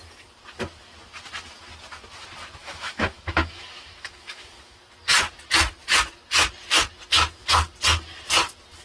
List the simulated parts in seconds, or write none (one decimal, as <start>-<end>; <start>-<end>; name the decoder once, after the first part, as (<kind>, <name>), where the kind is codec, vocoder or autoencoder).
2.6-4.8 (autoencoder, DAC-VAE)